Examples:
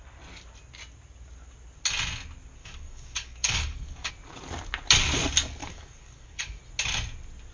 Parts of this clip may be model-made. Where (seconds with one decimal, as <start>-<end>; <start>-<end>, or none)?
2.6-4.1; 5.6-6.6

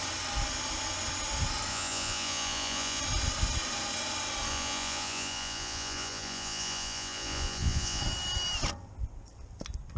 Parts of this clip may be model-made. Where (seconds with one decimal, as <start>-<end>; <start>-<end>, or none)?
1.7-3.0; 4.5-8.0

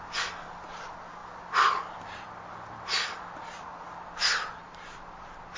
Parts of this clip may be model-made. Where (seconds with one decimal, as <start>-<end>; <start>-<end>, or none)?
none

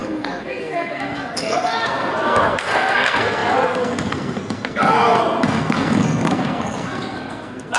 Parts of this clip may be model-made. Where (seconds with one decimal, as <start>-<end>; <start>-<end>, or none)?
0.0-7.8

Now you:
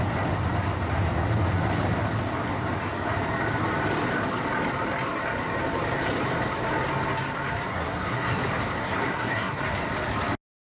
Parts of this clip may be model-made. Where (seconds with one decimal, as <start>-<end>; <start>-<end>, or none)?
7.7-8.4; 8.8-9.6